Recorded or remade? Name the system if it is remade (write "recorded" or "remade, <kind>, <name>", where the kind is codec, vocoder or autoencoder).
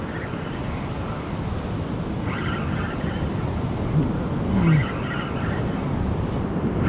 recorded